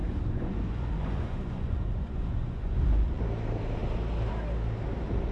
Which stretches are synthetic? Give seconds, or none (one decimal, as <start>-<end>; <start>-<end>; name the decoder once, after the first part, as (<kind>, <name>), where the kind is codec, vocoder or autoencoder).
0.0-3.2 (vocoder, Vocos)